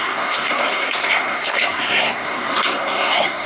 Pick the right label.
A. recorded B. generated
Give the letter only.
B